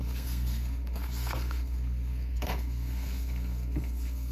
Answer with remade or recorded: remade